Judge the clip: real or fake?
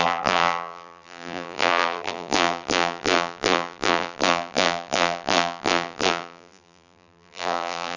fake